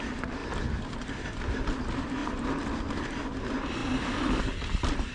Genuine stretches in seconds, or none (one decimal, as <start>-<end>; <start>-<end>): 0.0-2.2; 2.9-3.8; 4.4-5.1